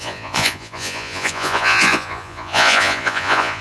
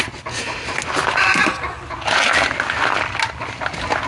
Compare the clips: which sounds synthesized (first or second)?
first